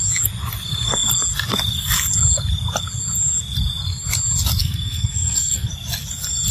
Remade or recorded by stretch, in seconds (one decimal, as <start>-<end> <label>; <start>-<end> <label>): 0.0-4.6 recorded; 4.6-5.7 remade; 5.7-6.5 recorded

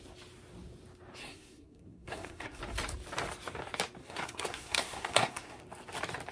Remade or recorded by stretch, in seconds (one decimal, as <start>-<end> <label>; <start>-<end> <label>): 0.0-1.2 recorded; 1.2-2.6 remade; 2.6-4.0 recorded; 4.0-5.6 remade; 5.6-6.3 recorded

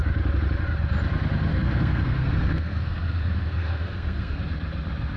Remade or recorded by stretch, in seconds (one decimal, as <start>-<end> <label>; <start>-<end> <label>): 0.0-1.5 recorded; 1.5-4.4 remade; 4.4-5.2 recorded

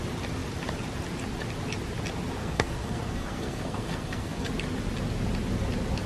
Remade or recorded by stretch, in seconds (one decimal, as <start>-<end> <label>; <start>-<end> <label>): 0.0-2.4 recorded; 2.4-4.5 remade; 4.5-6.1 recorded

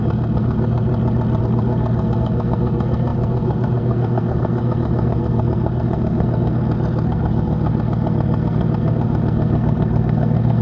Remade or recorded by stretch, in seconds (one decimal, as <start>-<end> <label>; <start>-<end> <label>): 0.0-0.9 remade; 0.9-1.4 recorded; 1.4-10.6 remade

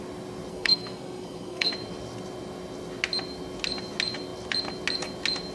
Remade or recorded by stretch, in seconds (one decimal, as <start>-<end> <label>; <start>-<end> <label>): 0.0-0.5 recorded; 0.5-1.7 remade; 1.7-5.5 recorded